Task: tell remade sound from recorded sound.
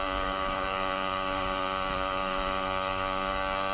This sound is remade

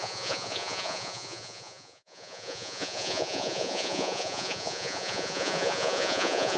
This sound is remade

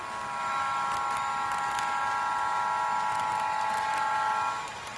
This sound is recorded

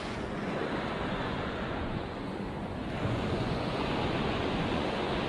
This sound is remade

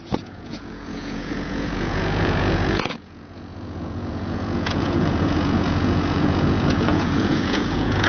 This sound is remade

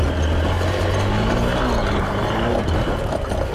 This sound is recorded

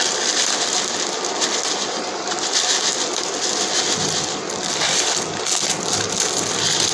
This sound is recorded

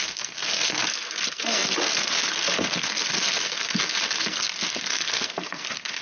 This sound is remade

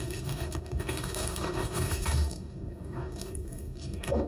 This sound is remade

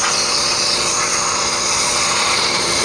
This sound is remade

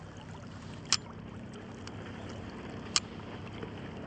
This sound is recorded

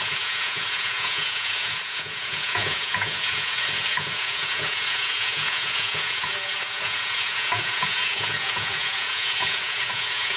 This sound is remade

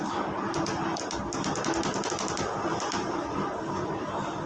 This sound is remade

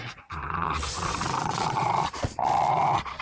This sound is remade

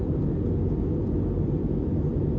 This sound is recorded